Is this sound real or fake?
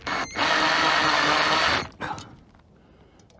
real